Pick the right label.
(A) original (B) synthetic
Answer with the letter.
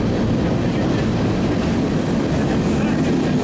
A